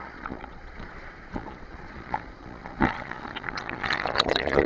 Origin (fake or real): fake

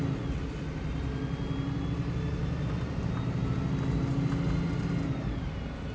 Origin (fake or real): real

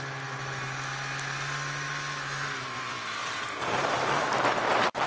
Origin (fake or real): real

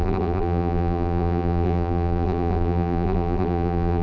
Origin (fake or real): fake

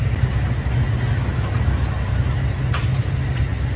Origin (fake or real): real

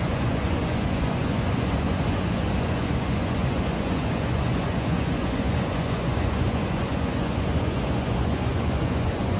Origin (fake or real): fake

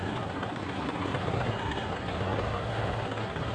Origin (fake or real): fake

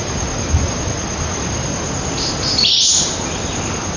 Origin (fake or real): real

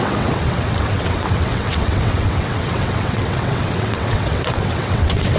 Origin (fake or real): fake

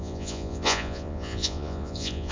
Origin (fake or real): fake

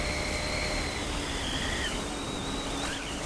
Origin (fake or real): real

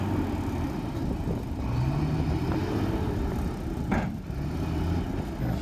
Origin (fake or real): real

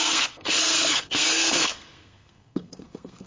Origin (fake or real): fake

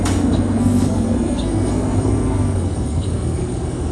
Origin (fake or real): fake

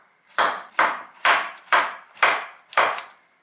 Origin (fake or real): fake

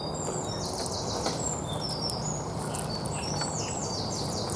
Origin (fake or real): real